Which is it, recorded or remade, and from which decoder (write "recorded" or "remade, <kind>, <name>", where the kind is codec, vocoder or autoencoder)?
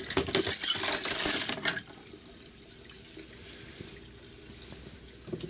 recorded